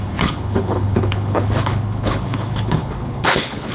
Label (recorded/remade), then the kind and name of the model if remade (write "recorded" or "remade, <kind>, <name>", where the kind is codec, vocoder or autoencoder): remade, codec, HILCodec